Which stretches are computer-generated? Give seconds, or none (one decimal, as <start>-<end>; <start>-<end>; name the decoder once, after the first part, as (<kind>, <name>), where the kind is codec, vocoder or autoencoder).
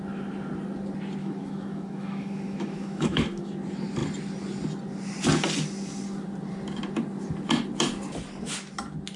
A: 1.2-3.5 (autoencoder, DAC-VAE)